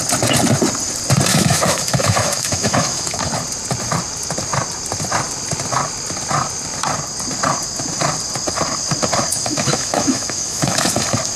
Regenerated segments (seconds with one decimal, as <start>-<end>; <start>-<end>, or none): 1.3-3.2; 9.3-11.0